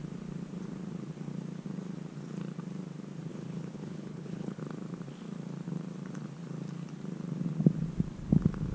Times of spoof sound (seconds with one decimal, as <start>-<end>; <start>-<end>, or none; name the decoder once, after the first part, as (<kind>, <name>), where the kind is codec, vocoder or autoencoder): 3.3-4.6 (codec, HILCodec)